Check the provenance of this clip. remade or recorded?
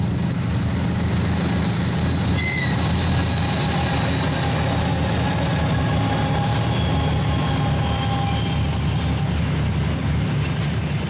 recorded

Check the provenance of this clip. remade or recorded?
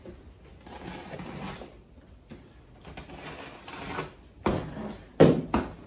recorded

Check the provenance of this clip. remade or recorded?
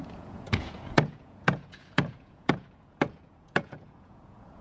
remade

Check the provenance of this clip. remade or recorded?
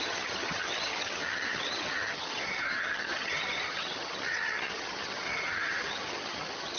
remade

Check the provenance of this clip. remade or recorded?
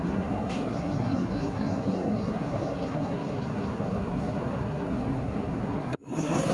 remade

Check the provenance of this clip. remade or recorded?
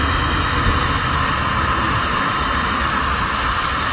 recorded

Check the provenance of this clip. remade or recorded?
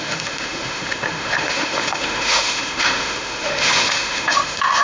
remade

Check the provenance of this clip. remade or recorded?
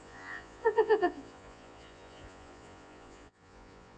remade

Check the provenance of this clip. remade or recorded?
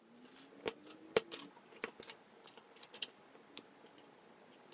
recorded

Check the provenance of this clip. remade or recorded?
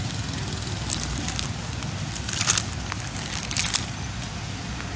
recorded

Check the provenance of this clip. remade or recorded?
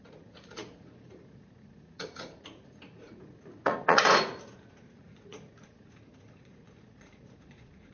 remade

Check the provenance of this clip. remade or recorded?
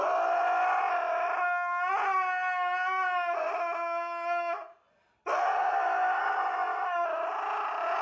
recorded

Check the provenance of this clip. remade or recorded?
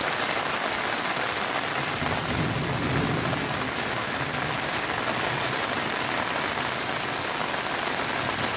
recorded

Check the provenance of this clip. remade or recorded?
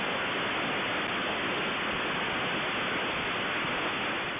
recorded